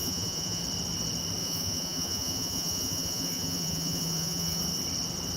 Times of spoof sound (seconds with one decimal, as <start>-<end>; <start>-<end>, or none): 0.0-0.6; 1.4-4.6